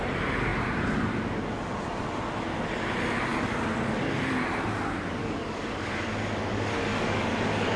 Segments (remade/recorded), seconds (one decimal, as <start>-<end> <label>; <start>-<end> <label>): 0.0-5.2 recorded; 5.2-6.1 remade; 6.1-6.5 recorded; 6.5-7.8 remade